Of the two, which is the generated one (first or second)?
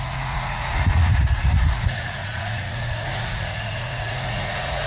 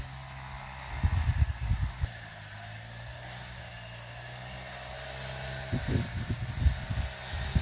first